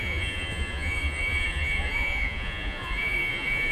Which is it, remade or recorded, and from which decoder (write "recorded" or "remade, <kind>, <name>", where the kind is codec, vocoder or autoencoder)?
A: remade, vocoder, Vocos